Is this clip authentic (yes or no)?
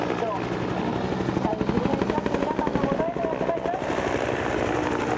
yes